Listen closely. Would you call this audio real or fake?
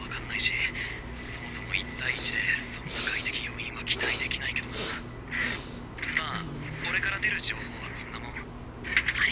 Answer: real